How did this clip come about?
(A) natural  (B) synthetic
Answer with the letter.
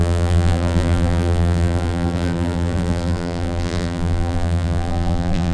B